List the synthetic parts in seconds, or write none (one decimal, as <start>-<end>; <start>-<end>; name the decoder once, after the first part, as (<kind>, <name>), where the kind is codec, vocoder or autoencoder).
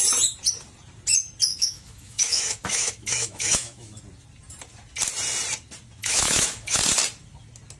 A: 1.5-4.0 (autoencoder, DAC-VAE); 6.0-6.8